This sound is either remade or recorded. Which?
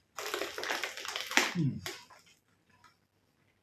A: recorded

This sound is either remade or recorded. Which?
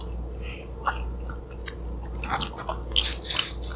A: recorded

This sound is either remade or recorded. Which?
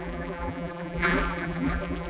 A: remade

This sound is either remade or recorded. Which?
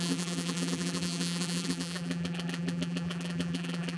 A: remade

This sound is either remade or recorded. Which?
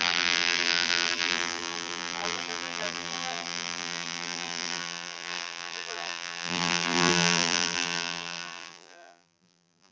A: remade